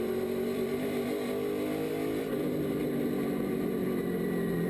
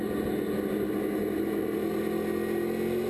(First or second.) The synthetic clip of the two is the first